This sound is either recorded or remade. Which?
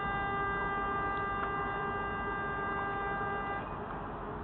recorded